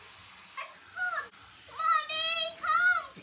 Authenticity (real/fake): real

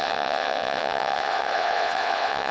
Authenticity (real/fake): fake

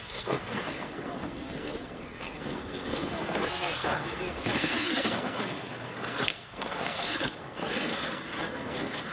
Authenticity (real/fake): fake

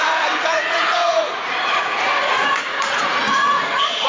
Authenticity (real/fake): fake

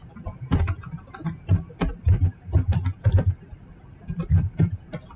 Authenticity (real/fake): fake